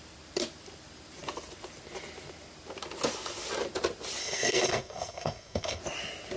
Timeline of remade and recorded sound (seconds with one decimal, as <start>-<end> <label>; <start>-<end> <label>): 0.0-4.2 recorded; 4.2-5.8 remade; 5.8-6.4 recorded